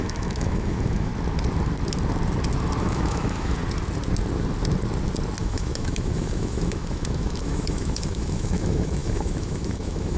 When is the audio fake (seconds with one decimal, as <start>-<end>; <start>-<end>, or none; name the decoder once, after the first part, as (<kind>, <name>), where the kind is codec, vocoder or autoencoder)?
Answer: 0.0-1.1 (autoencoder, DAC-VAE); 2.8-3.6; 5.4-10.2